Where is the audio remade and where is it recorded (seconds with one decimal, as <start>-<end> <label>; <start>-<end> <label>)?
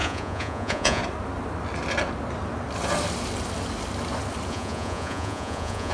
0.0-1.0 remade; 1.0-4.5 recorded; 4.5-5.9 remade